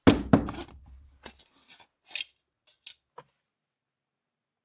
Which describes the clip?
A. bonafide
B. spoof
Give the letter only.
A